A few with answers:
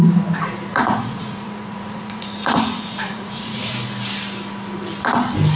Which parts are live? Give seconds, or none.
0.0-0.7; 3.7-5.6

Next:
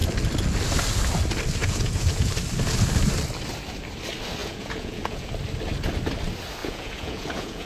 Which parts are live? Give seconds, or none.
0.0-1.6; 2.3-4.4; 5.3-6.6

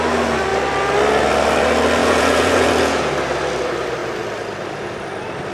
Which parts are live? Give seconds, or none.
0.0-2.0; 3.1-5.5

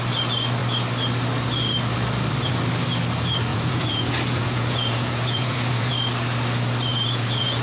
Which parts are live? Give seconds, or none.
0.0-3.5; 5.9-6.9